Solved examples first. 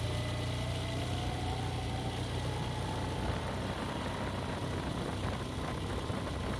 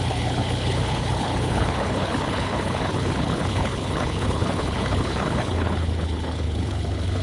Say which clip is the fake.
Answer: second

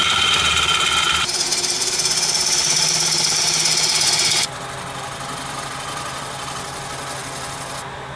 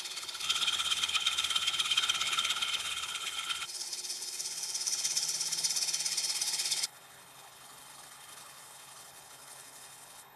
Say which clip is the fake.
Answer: second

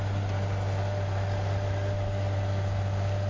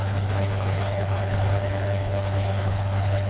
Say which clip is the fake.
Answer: second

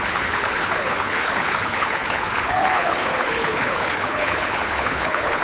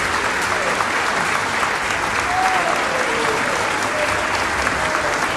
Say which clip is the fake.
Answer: first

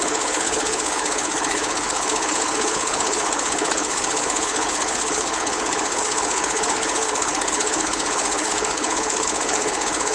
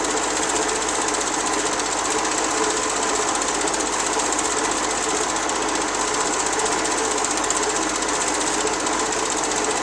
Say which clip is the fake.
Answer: first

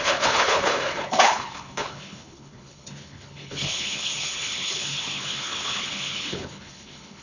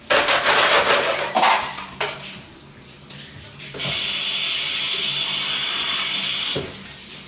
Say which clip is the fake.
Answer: first